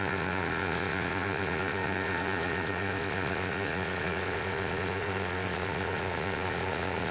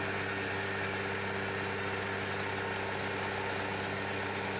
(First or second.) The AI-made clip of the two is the first